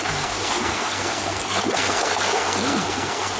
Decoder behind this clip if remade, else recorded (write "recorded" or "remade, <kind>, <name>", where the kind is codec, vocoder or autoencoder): remade, codec, SNAC